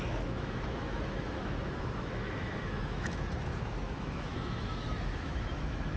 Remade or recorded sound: remade